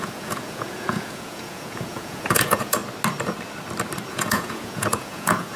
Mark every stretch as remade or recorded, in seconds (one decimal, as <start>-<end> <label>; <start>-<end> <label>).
0.0-2.8 remade; 2.8-4.1 recorded; 4.1-5.6 remade